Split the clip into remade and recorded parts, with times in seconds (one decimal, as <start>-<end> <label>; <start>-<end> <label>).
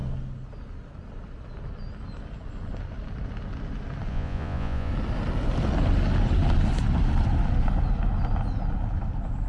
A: 0.0-4.1 recorded; 4.1-4.9 remade; 4.9-9.5 recorded